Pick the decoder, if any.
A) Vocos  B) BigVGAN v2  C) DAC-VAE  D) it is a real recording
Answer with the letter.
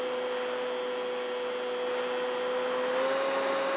D